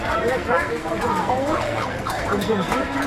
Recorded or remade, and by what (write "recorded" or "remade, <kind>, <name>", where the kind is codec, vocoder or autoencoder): remade, codec, SNAC